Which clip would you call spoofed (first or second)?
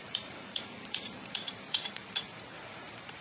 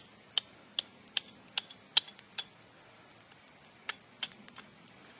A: first